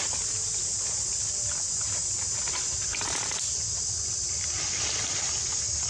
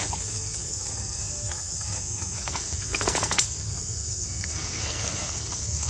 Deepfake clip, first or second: second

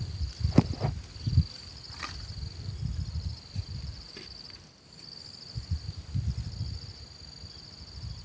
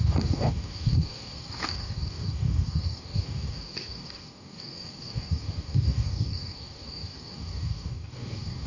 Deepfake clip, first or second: second